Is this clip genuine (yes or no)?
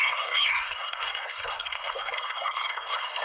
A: no